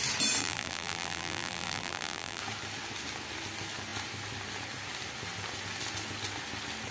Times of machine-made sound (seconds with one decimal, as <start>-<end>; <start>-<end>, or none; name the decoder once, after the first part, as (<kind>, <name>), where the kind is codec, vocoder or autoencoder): 0.4-2.4 (vocoder, BigVGAN v2)